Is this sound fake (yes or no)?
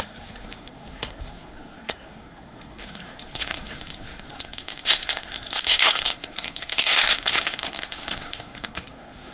yes